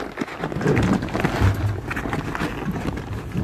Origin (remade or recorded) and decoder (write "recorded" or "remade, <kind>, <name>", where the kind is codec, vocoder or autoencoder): recorded